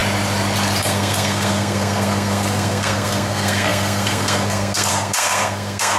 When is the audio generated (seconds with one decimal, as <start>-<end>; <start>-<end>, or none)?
0.8-6.0